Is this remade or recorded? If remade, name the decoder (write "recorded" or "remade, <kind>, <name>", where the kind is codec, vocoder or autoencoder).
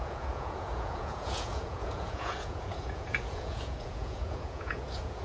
remade, vocoder, Vocos